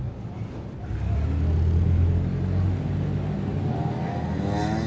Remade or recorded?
recorded